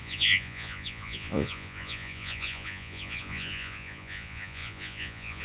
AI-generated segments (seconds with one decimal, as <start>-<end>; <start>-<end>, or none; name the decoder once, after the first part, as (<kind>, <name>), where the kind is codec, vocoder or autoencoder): 0.0-5.4 (vocoder, Vocos)